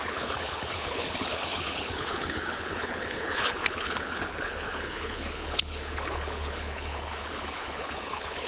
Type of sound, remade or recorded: remade